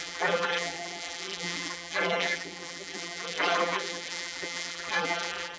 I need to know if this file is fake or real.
fake